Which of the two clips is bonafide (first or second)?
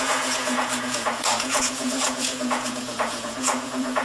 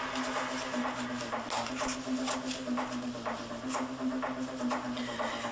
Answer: second